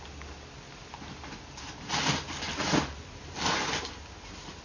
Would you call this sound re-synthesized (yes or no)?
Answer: no